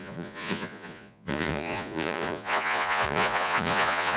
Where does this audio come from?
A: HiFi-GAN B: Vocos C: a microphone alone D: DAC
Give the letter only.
B